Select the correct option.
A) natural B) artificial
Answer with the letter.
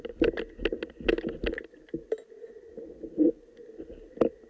A